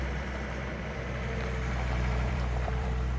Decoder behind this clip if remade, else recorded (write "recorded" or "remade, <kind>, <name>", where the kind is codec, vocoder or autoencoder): remade, vocoder, BigVGAN v2